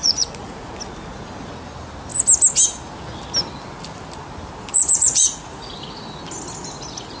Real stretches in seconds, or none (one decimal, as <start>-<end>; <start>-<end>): 0.7-4.7; 5.7-7.2